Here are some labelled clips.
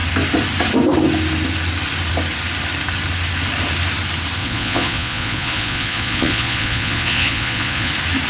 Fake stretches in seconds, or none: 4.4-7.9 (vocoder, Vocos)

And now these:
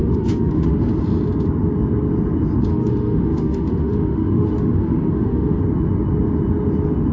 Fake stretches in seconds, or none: 0.0-0.9 (autoencoder, DAC-VAE); 2.7-5.6

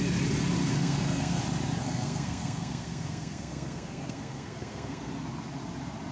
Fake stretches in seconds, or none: 0.6-1.4 (codec, SNAC); 1.8-5.1

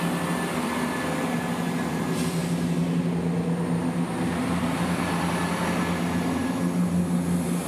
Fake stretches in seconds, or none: none